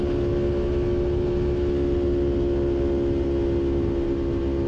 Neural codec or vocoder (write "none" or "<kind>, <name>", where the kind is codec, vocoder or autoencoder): none